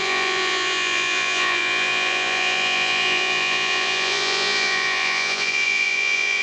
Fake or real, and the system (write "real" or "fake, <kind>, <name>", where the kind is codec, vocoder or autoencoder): fake, vocoder, Vocos